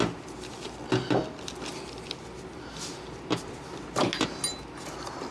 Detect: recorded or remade recorded